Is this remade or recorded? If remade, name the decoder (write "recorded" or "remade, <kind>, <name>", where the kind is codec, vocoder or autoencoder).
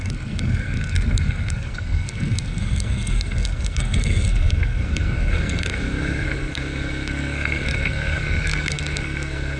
remade, codec, SNAC